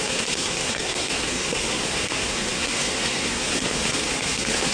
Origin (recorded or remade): remade